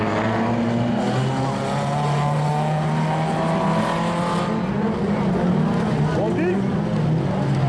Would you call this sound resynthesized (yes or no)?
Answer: no